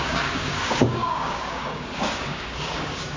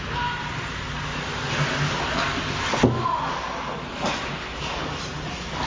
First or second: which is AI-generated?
first